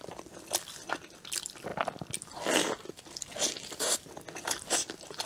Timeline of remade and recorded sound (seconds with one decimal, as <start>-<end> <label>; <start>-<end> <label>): 0.0-5.3 recorded